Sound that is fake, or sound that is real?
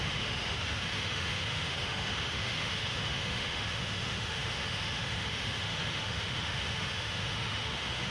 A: fake